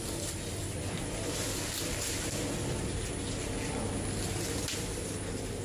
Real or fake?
real